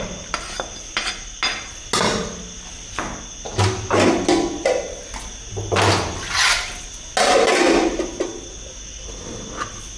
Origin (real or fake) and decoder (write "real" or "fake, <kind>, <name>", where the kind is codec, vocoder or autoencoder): real